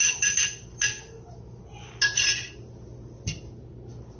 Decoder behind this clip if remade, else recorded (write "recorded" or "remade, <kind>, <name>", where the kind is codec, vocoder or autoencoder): recorded